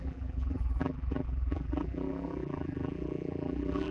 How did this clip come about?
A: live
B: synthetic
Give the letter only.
B